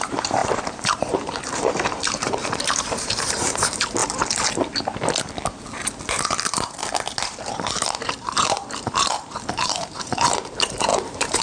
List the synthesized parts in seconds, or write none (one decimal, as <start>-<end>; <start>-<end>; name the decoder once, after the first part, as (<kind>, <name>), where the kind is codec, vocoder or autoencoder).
0.0-4.0 (vocoder, BigVGAN v2); 7.4-11.4